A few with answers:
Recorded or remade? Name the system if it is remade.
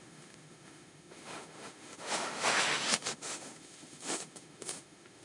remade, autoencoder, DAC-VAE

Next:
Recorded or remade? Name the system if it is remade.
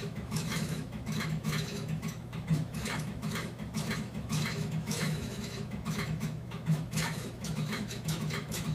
remade, autoencoder, DAC-VAE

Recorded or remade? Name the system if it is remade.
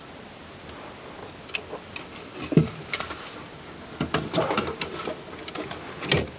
recorded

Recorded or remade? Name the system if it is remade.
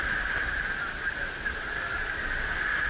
recorded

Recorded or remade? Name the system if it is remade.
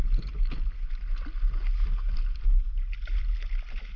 recorded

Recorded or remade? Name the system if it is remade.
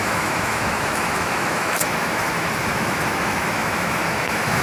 remade, autoencoder, DAC-VAE